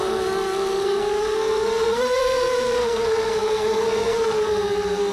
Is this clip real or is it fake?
fake